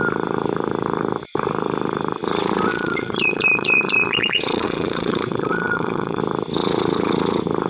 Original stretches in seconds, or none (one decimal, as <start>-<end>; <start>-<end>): 0.0-2.7; 6.2-7.7